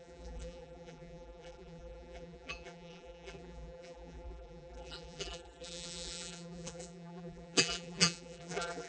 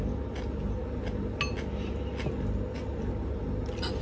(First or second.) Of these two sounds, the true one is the second